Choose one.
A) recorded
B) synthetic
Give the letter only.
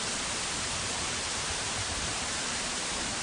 B